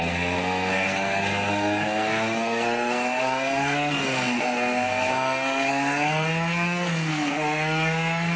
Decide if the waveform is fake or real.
fake